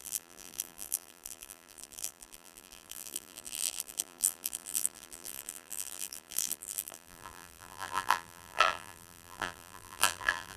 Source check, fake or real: fake